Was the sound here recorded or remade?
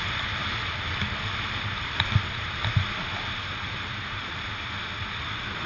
recorded